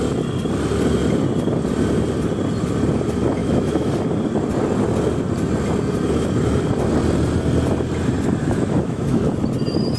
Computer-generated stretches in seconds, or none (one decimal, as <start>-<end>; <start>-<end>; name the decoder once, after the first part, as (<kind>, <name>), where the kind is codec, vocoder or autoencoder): 3.4-3.9 (autoencoder, DAC-VAE); 8.4-9.2